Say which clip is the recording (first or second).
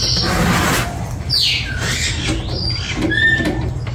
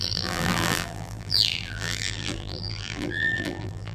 first